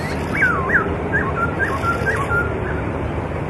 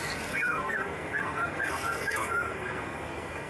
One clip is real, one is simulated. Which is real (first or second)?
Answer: first